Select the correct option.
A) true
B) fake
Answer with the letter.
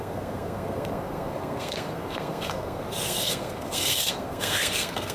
B